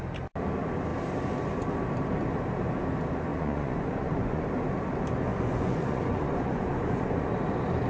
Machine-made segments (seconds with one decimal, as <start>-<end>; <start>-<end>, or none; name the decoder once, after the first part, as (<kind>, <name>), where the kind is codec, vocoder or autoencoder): 3.3-4.4 (vocoder, Vocos); 5.3-7.3